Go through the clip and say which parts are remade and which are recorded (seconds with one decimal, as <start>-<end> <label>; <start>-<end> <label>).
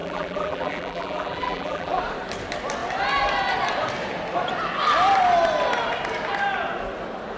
0.0-2.0 remade; 2.0-7.4 recorded